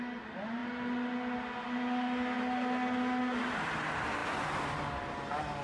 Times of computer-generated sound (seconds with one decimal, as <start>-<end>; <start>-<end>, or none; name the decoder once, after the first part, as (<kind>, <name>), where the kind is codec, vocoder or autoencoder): none